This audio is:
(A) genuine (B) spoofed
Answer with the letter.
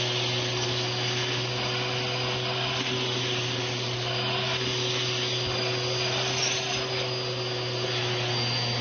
A